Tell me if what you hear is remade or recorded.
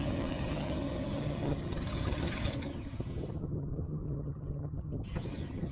remade